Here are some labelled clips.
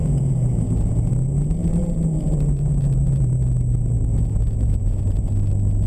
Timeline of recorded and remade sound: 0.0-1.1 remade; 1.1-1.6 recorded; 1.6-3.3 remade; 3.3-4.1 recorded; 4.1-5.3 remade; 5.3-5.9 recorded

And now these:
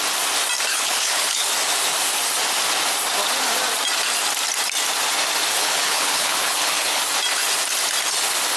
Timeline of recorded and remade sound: 0.0-0.7 recorded; 0.7-1.5 remade; 1.5-5.5 recorded; 5.5-7.0 remade; 7.0-8.6 recorded

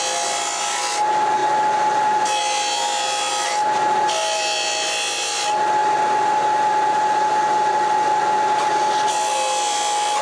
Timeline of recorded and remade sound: 0.0-10.2 recorded

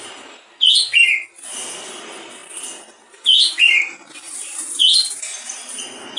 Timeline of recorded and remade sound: 0.0-6.2 recorded

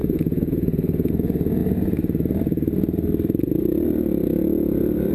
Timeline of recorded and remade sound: 0.0-1.1 remade; 1.1-5.1 recorded

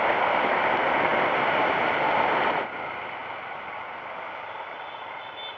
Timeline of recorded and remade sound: 0.0-5.6 recorded

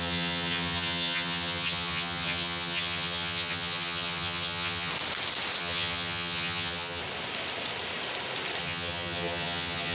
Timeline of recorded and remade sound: 0.0-4.9 remade; 4.9-5.6 recorded; 5.6-7.0 remade; 7.0-8.6 recorded; 8.6-9.9 remade